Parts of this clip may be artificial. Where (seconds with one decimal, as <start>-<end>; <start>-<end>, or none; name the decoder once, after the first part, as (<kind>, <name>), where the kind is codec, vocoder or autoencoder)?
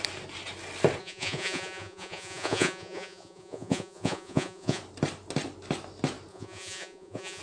1.0-4.8 (vocoder, Vocos); 6.3-7.4